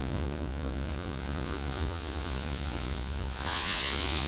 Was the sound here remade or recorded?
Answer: remade